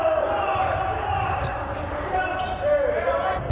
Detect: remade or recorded remade